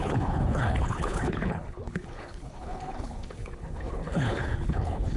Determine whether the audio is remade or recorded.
remade